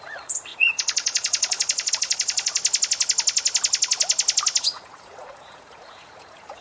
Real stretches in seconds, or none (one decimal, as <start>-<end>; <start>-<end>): 2.6-4.6